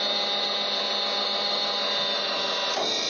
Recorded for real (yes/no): yes